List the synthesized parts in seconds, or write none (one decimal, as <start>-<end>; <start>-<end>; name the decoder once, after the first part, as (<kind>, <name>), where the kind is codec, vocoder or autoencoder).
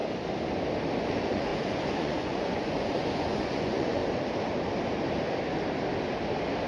1.1-4.0 (vocoder, Vocos)